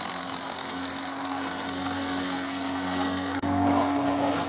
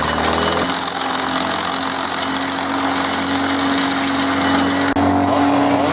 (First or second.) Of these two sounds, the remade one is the first